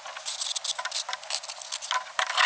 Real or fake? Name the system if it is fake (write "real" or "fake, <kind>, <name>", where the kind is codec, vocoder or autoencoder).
real